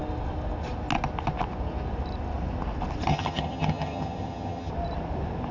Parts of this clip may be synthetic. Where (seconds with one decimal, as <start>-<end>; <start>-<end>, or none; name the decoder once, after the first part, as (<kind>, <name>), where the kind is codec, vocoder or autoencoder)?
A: 3.1-4.7 (vocoder, HiFi-GAN)

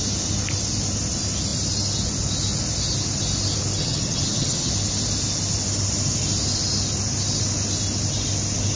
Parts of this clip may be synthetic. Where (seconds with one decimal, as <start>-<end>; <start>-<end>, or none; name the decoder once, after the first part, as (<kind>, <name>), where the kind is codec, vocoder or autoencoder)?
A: 3.8-4.7 (vocoder, HiFi-GAN)

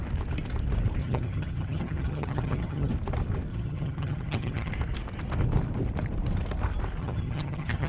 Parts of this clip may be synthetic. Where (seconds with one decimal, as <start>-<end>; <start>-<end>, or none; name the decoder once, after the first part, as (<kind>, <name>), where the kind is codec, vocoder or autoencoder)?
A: 1.0-2.9 (vocoder, HiFi-GAN); 3.5-4.7; 7.0-7.9